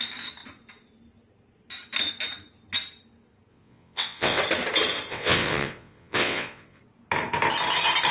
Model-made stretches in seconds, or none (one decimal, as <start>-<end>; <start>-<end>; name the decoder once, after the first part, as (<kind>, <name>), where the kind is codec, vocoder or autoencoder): 3.5-4.4 (vocoder, WaveNeXt); 5.1-6.8